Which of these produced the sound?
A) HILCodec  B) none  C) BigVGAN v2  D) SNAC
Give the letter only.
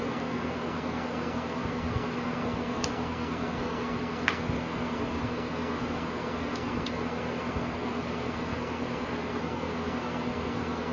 D